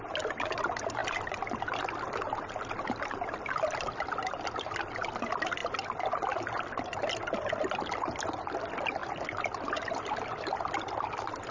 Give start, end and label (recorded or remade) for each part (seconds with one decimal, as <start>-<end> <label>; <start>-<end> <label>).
0.0-11.5 recorded